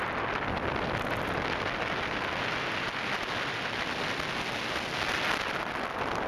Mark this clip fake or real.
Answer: real